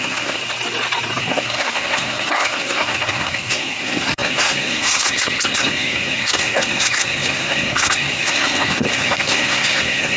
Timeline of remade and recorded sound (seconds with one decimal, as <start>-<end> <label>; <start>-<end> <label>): 0.0-0.4 remade; 0.4-1.2 recorded; 1.2-10.2 remade